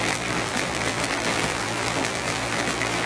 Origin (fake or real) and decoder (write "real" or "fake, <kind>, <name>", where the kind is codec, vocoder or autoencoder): fake, vocoder, BigVGAN v2